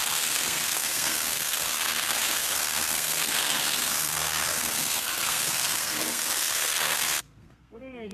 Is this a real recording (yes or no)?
no